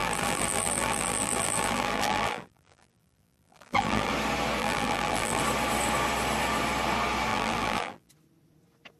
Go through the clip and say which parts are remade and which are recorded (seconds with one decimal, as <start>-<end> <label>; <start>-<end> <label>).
0.0-4.1 remade; 4.1-4.6 recorded; 4.6-5.4 remade; 5.4-7.3 recorded; 7.3-8.1 remade; 8.1-9.0 recorded

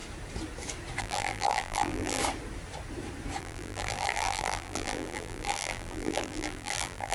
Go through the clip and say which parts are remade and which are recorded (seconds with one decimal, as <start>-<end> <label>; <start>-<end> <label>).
0.0-1.0 recorded; 1.0-2.2 remade; 2.2-3.4 recorded; 3.4-7.1 remade

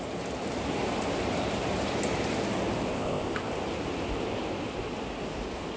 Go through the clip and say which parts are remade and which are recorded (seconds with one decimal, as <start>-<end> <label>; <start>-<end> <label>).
0.0-2.9 recorded; 2.9-3.5 remade; 3.5-5.8 recorded

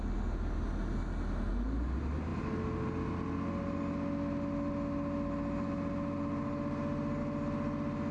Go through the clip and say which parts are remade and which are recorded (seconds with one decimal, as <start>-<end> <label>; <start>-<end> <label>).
0.0-8.1 recorded